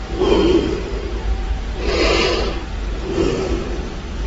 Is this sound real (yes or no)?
yes